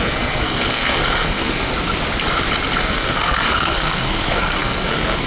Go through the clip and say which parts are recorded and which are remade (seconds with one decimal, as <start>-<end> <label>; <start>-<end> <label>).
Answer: 0.0-1.7 remade; 1.7-2.8 recorded; 2.8-5.3 remade